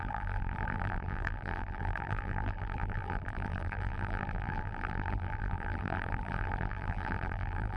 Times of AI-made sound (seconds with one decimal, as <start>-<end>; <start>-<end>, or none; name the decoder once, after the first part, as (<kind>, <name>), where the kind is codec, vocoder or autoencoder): 0.0-7.8 (vocoder, BigVGAN v2)